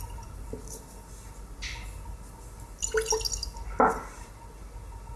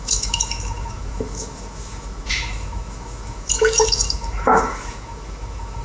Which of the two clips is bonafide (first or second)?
first